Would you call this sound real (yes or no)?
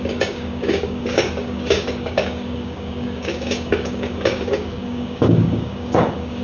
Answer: no